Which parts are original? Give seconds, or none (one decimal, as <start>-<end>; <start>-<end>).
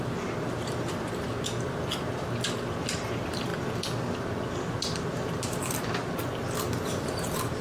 1.3-2.9; 3.5-5.1; 6.0-6.8